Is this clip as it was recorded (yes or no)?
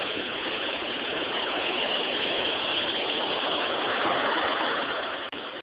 no